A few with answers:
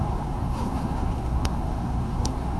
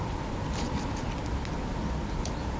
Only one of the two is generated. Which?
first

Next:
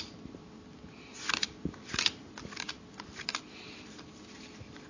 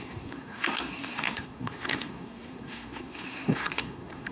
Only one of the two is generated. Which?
second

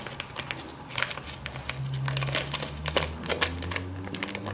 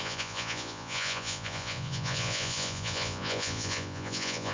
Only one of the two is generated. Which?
second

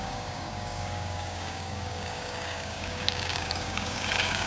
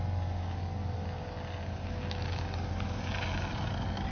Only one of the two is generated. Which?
first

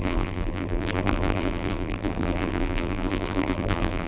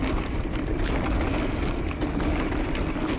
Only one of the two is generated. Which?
first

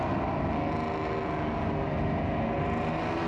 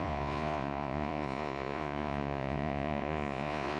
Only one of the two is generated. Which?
second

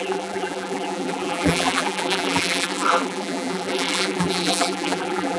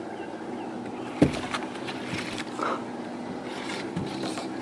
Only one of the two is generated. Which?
first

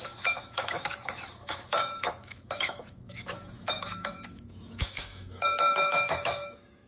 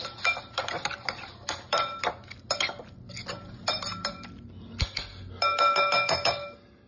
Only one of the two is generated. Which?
first